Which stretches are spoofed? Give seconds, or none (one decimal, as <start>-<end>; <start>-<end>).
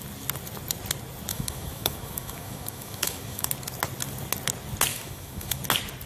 1.3-3.5; 4.9-5.6